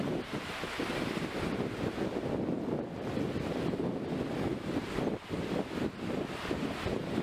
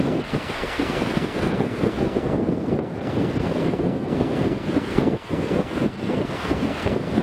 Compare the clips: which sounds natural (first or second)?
first